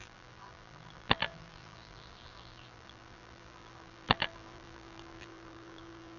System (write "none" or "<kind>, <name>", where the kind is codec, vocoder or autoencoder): vocoder, BigVGAN v2